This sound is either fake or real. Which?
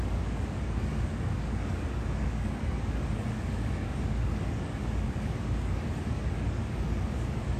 fake